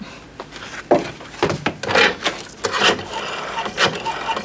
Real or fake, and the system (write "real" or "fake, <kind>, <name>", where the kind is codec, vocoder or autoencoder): real